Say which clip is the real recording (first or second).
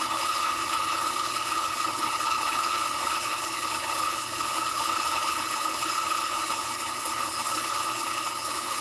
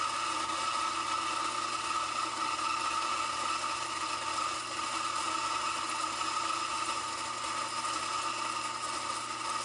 second